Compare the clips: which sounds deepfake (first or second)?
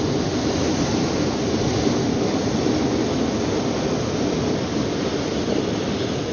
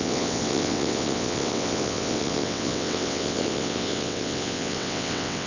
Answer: second